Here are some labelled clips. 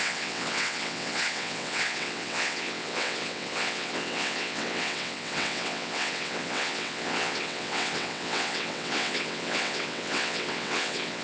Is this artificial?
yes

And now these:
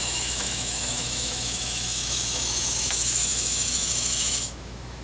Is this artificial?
yes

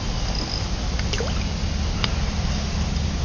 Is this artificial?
no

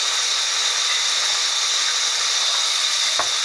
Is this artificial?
no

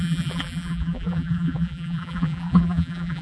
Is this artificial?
yes